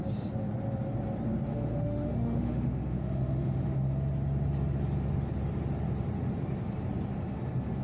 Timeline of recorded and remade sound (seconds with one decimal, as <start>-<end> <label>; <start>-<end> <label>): 0.0-1.5 recorded; 1.5-3.9 remade; 3.9-7.8 recorded